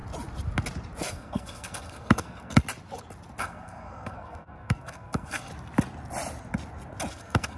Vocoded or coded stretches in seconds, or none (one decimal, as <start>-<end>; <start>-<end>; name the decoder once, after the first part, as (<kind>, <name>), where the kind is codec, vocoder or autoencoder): 1.1-2.6 (codec, SNAC); 3.4-5.5; 7.1-7.6